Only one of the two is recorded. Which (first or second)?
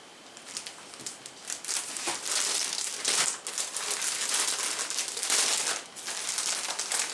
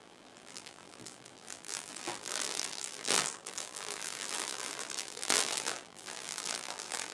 first